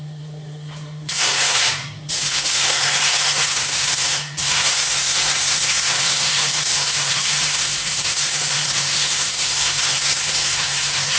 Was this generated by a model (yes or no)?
yes